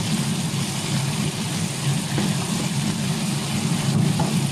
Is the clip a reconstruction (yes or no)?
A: no